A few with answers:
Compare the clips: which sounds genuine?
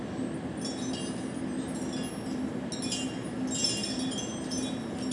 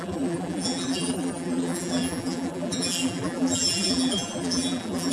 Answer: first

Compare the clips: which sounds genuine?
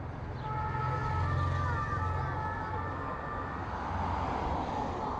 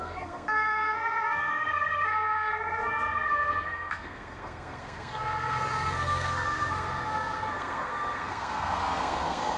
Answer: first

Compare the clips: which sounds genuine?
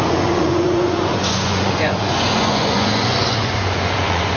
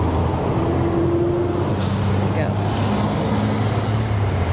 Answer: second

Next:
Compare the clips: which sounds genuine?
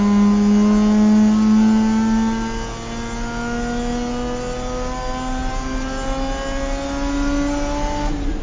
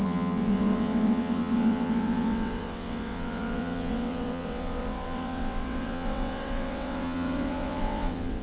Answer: first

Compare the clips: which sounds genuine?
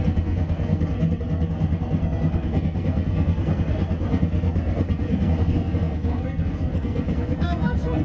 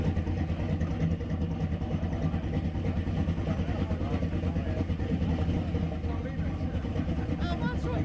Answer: second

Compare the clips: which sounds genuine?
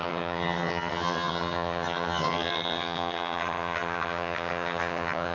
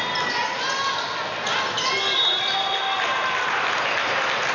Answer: second